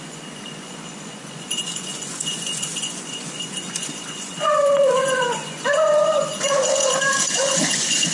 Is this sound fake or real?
fake